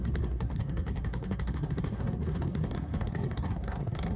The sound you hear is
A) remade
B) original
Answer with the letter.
A